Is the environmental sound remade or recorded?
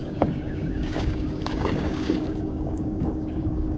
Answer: remade